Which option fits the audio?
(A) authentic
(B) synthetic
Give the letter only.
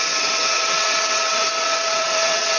B